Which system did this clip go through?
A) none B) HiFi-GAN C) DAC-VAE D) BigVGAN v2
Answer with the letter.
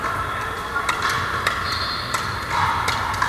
D